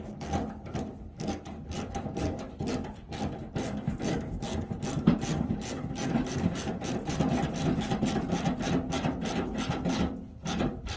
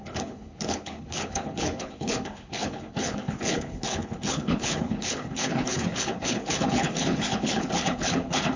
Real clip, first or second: first